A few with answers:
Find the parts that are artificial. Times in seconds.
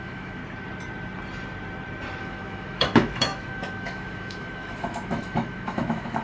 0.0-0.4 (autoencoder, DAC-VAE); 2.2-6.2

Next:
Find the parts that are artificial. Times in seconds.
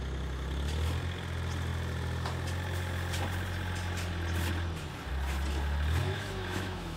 6.0-7.0 (autoencoder, DAC-VAE)